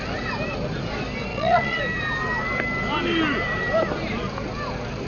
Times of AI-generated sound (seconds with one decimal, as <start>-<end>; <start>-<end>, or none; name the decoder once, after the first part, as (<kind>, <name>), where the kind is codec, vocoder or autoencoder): 1.3-1.8 (vocoder, Vocos)